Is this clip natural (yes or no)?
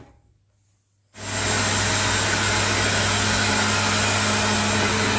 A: yes